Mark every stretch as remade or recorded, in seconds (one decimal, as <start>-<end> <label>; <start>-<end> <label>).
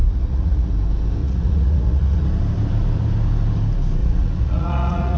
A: 0.0-0.7 remade; 0.7-1.2 recorded; 1.2-2.2 remade; 2.2-4.0 recorded; 4.0-5.2 remade